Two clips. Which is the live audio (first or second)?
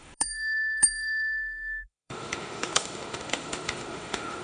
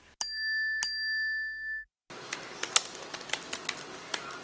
second